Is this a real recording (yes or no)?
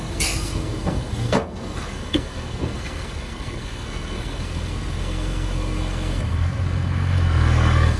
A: no